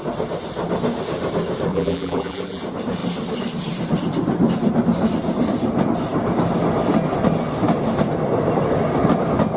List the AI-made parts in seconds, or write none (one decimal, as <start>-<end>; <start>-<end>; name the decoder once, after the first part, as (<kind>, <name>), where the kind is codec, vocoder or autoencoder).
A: 1.7-2.6 (vocoder, BigVGAN v2)